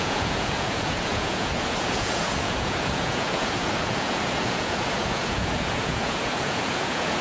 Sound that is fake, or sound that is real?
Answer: fake